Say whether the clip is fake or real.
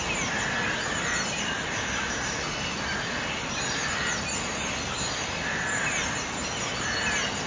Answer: real